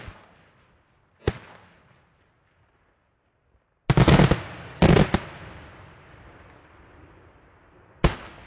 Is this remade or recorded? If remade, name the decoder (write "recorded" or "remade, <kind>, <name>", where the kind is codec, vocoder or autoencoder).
recorded